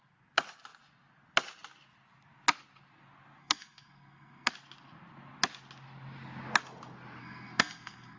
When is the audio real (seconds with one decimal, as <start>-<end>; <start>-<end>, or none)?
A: 0.0-3.4; 4.5-7.2